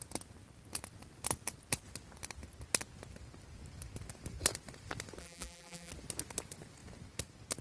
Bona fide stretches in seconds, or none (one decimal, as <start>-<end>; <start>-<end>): 0.0-5.2; 5.9-7.6